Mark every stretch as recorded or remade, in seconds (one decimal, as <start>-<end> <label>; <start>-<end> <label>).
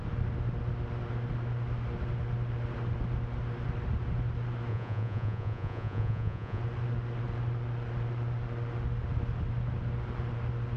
0.0-4.7 recorded; 4.7-6.6 remade; 6.6-10.8 recorded